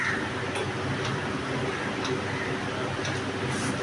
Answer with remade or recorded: recorded